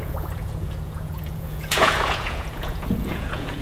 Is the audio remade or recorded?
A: remade